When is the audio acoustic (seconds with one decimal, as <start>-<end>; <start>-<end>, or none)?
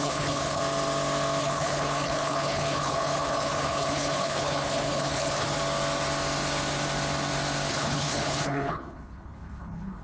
0.6-1.4; 5.6-7.7